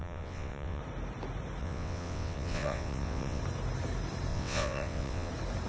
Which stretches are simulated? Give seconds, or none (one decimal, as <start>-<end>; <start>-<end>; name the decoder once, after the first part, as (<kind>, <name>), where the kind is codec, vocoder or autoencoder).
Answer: 0.0-0.8 (vocoder, WaveNeXt); 1.6-3.4; 4.3-5.3